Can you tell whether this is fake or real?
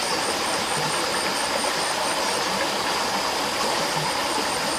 real